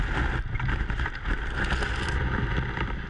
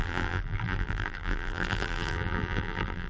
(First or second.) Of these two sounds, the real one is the first